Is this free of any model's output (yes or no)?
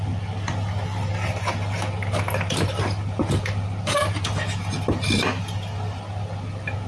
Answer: yes